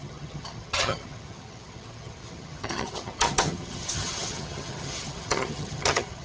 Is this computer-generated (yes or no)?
yes